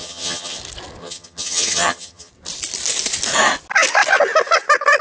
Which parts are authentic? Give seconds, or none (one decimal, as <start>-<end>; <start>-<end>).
0.6-1.0; 2.3-5.0